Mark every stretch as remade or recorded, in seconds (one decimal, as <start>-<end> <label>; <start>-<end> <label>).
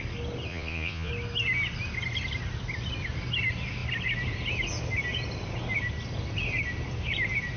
0.0-0.5 recorded; 0.5-1.1 remade; 1.1-7.6 recorded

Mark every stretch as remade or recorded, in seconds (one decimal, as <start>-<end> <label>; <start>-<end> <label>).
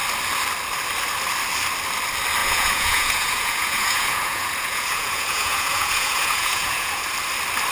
0.0-2.4 recorded; 2.4-7.0 remade; 7.0-7.7 recorded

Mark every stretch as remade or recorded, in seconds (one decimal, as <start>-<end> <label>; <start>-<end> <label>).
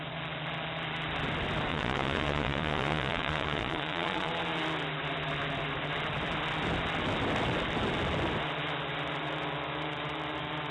0.0-1.7 recorded; 1.7-4.3 remade; 4.3-10.7 recorded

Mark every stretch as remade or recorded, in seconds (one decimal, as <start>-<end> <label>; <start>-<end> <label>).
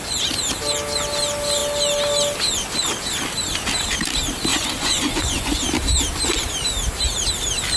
0.0-4.5 recorded; 4.5-5.6 remade; 5.6-7.8 recorded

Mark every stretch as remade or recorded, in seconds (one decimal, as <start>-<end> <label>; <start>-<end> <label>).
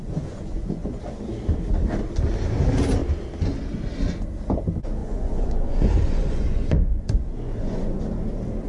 0.0-1.0 remade; 1.0-5.0 recorded; 5.0-8.0 remade; 8.0-8.7 recorded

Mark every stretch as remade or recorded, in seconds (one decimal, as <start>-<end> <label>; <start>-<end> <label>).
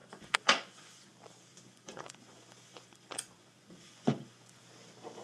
0.0-1.1 remade; 1.1-1.5 recorded; 1.5-4.6 remade; 4.6-5.2 recorded